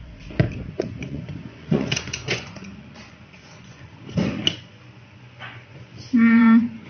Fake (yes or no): yes